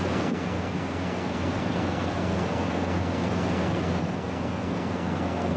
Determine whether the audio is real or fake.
fake